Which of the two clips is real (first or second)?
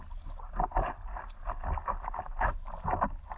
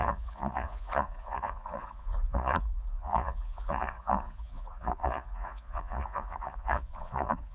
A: first